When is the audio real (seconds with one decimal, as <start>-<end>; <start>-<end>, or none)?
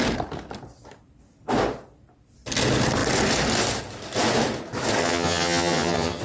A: 0.0-5.0